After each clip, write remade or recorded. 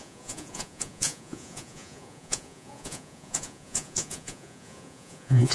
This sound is remade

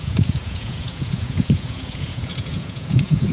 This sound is remade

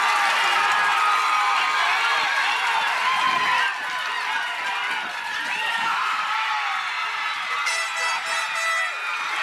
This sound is recorded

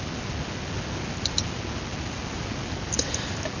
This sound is recorded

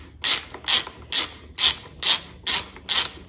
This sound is recorded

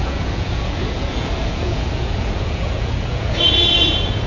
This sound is remade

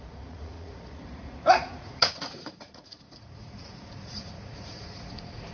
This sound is remade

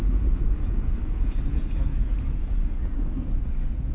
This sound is remade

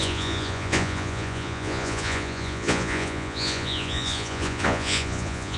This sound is remade